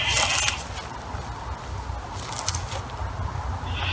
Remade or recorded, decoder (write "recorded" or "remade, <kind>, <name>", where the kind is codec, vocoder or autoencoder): recorded